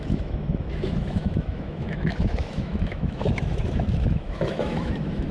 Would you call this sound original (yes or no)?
no